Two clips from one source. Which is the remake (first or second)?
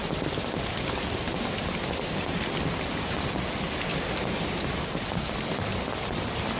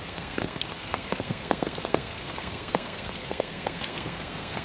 second